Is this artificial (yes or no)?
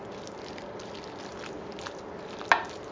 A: no